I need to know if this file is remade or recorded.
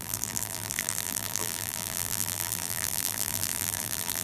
remade